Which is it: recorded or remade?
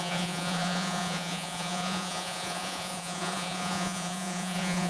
remade